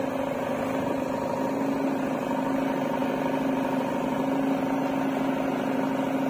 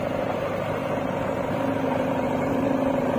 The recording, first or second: first